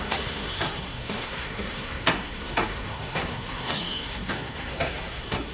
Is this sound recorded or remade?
remade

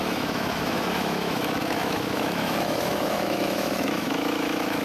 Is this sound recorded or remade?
remade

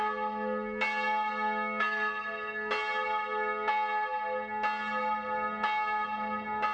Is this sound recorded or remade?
recorded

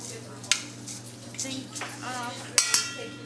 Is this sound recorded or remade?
recorded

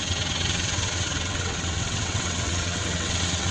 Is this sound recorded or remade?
remade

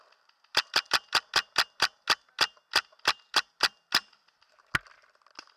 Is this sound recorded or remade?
recorded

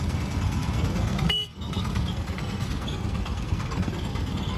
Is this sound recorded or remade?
remade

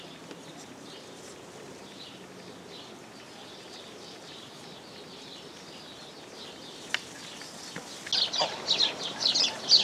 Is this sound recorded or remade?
recorded